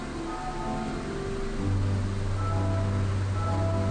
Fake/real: real